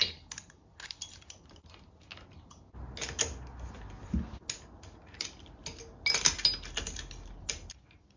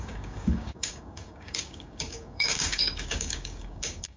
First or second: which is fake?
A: second